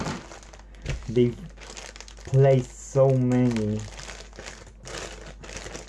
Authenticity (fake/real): real